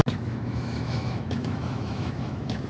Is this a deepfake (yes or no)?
yes